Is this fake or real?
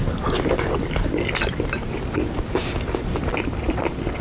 real